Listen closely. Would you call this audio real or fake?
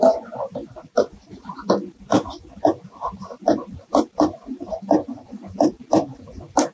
fake